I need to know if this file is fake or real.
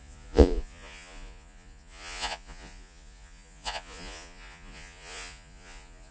fake